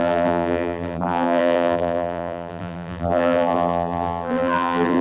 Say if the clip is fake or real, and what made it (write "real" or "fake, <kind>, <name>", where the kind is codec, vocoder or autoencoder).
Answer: fake, vocoder, BigVGAN v2